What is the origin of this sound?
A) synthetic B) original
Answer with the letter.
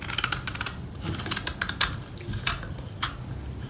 B